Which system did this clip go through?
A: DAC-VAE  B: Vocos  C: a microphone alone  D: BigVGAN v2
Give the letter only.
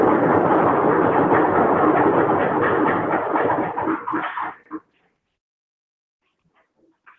D